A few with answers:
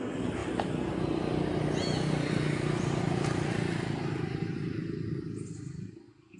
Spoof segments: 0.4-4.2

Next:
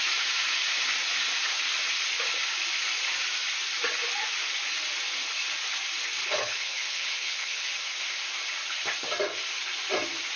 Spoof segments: 6.2-7.7

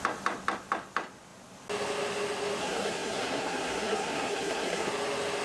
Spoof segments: 2.6-4.9

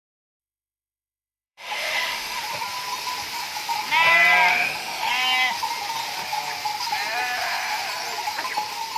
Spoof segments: 0.4-2.4; 4.5-5.1

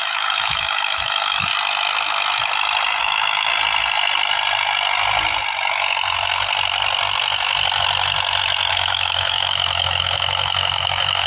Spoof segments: 0.0-1.5; 3.0-3.5; 8.7-11.3

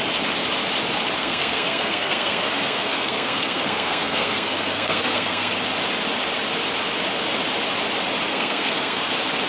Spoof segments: 1.2-5.5; 8.3-9.1

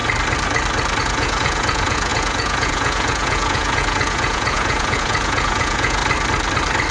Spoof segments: 1.0-6.0